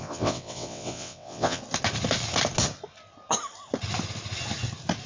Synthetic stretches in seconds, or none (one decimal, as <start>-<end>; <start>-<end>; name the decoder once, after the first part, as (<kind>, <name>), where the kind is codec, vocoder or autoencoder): 0.0-1.6 (vocoder, WaveNeXt)